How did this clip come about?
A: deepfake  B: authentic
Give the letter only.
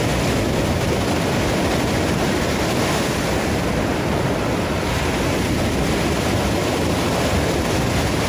A